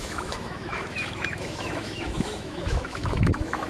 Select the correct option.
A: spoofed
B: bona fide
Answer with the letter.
A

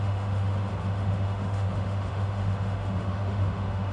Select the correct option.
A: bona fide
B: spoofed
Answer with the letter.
B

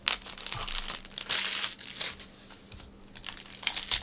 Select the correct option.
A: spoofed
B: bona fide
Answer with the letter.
B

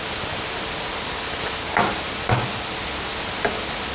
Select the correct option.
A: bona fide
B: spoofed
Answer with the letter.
A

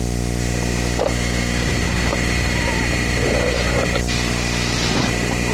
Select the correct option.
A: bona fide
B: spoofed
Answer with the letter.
A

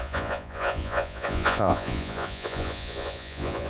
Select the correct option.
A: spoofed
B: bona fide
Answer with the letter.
A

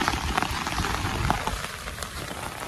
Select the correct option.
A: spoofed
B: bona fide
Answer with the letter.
A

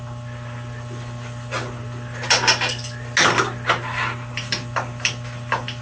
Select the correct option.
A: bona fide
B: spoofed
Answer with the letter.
A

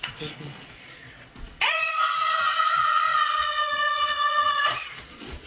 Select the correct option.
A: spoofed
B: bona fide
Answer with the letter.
A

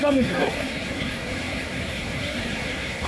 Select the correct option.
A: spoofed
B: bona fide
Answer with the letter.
A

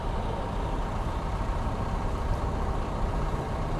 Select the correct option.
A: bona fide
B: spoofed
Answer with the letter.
A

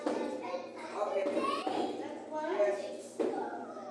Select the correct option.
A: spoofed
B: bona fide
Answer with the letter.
B